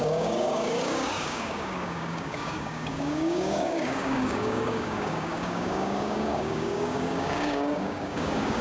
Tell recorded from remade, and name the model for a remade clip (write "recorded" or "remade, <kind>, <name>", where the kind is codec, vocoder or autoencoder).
remade, codec, DAC